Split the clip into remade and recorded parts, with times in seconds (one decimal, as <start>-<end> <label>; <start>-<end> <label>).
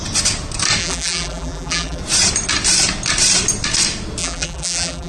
0.0-0.8 recorded; 0.8-2.0 remade; 2.0-4.2 recorded; 4.2-5.1 remade